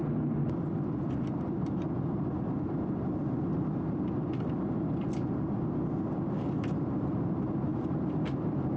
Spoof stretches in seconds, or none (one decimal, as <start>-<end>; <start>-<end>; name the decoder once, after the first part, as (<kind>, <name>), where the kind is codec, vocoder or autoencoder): none